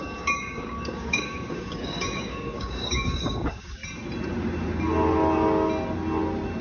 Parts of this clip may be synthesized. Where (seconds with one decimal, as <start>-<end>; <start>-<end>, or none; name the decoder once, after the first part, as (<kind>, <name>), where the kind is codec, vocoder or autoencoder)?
0.0-3.8 (codec, DAC)